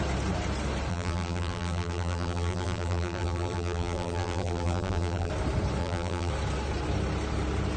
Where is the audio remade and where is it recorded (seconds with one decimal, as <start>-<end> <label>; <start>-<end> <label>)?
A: 0.0-0.9 recorded; 0.9-5.3 remade; 5.3-5.8 recorded; 5.8-6.3 remade; 6.3-7.8 recorded